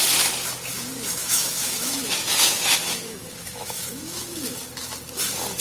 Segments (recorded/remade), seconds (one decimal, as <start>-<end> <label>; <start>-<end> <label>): 0.0-1.2 recorded; 1.2-4.6 remade; 4.6-5.6 recorded